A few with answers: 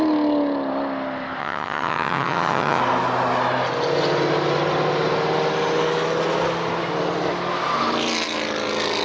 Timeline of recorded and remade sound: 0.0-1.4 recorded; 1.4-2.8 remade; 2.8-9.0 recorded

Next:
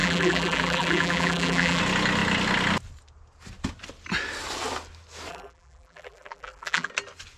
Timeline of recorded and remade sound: 0.0-1.8 remade; 1.8-5.3 recorded; 5.3-6.9 remade; 6.9-7.4 recorded

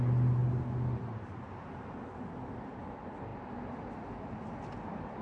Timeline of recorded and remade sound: 0.0-5.2 recorded

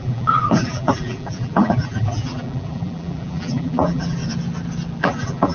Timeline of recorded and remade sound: 0.0-4.2 remade; 4.2-5.0 recorded; 5.0-5.5 remade

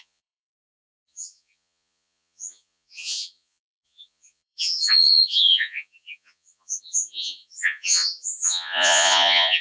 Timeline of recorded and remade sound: 0.0-9.6 remade

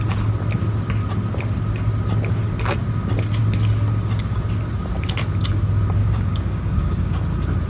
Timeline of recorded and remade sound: 0.0-6.0 recorded; 6.0-7.2 remade; 7.2-7.7 recorded

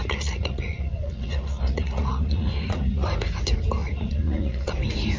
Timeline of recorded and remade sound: 0.0-3.1 remade; 3.1-3.8 recorded; 3.8-4.7 remade; 4.7-5.2 recorded